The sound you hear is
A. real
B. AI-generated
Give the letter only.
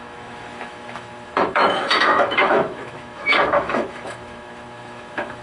B